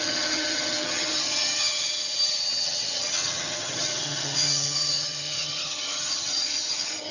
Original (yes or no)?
no